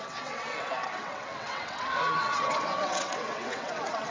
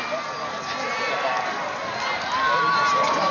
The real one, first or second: second